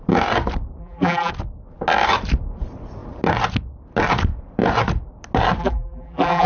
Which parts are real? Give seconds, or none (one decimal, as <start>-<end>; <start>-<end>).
0.0-0.8; 1.3-5.6